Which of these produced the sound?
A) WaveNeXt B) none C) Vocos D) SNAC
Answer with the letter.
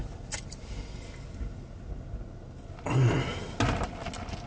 B